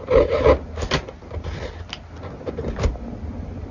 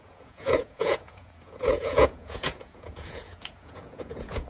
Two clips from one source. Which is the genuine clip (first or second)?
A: first